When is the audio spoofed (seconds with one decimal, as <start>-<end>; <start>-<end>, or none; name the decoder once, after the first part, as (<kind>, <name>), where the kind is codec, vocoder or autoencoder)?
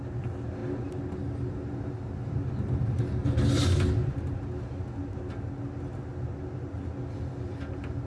none